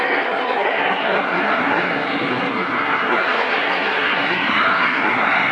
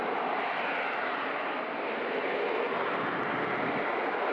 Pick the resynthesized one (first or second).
first